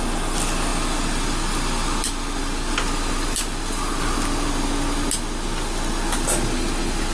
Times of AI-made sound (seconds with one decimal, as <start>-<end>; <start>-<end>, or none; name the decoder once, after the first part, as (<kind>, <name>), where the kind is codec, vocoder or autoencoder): none